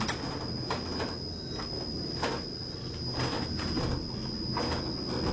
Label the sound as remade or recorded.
recorded